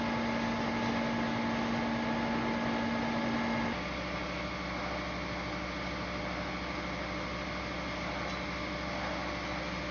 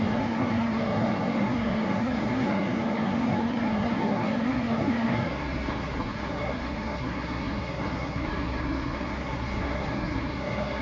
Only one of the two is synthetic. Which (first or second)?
second